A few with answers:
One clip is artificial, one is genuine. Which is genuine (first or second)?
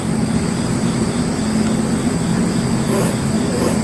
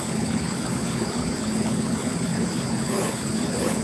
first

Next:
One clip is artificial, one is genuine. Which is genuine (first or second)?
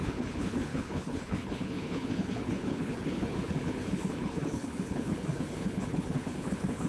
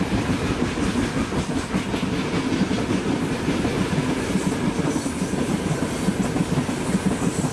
second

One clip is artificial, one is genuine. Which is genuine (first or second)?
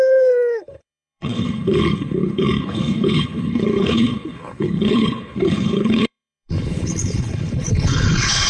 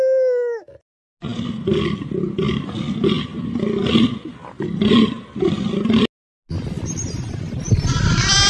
second